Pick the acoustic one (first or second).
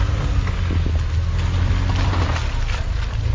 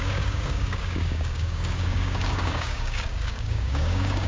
first